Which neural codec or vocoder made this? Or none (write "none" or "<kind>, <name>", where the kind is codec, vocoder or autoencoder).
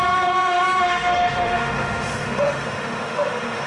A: autoencoder, DAC-VAE